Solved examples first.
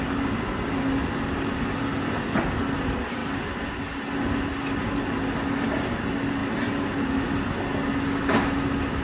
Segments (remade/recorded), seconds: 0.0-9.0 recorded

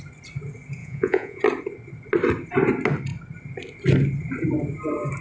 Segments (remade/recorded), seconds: 0.0-0.8 recorded; 0.8-1.4 remade; 1.4-5.2 recorded

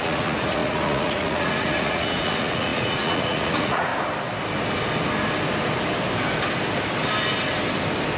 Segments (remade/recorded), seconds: 0.0-3.9 remade; 3.9-8.2 recorded

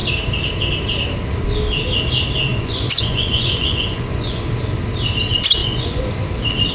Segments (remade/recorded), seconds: 0.0-2.5 recorded; 2.5-4.4 remade; 4.4-5.6 recorded; 5.6-6.1 remade; 6.1-6.7 recorded